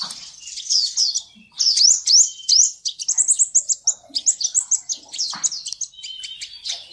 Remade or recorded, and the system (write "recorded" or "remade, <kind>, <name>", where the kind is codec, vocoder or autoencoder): recorded